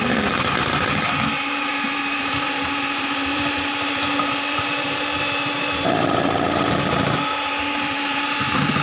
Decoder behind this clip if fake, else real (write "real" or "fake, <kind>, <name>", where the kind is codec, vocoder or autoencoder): fake, vocoder, BigVGAN v2